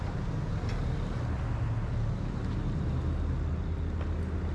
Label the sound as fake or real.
real